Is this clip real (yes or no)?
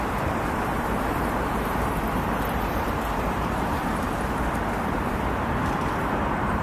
no